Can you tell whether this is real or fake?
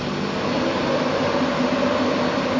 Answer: real